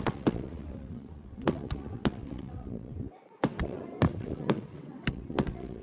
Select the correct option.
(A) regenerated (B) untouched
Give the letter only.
A